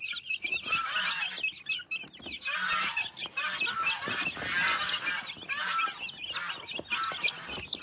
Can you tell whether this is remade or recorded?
recorded